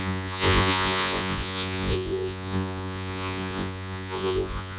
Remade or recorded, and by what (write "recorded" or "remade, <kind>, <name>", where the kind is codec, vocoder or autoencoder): remade, vocoder, Vocos